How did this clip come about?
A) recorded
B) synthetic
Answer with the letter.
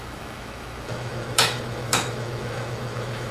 B